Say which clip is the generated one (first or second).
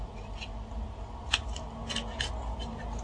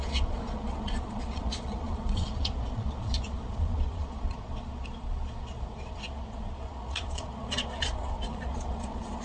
second